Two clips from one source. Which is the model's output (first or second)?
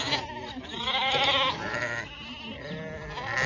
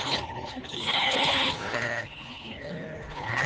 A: second